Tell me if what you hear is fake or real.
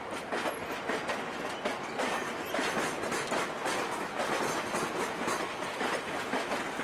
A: real